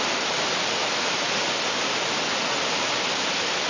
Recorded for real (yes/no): yes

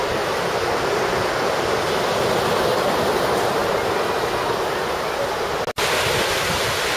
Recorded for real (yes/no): yes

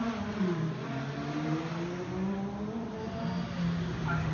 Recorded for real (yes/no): yes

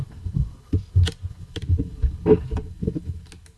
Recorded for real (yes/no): yes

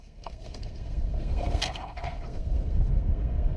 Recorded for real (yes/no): no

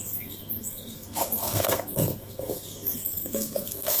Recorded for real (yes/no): no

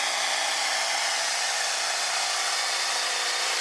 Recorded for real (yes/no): yes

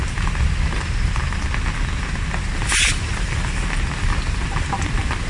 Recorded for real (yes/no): yes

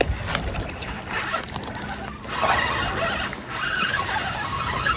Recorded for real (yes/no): yes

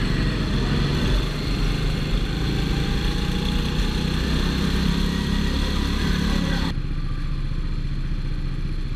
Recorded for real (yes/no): yes